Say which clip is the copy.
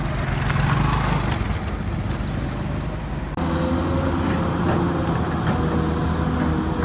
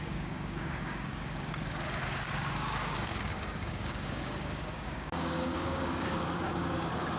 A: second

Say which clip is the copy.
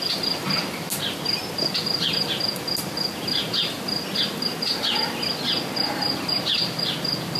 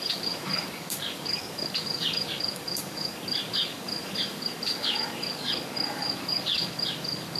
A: second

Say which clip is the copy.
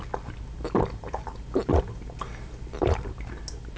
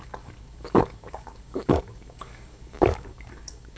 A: second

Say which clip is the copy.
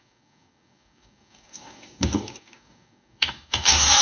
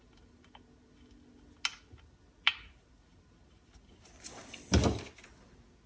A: first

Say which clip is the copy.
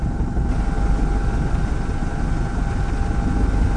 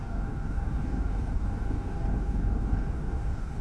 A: second